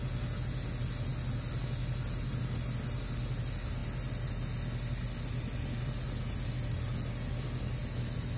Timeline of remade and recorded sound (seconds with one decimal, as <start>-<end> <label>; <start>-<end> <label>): 0.0-8.4 recorded